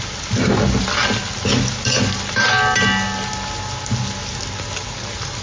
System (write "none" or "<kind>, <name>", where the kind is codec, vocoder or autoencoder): none